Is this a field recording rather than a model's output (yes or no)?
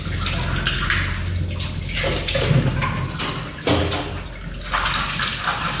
yes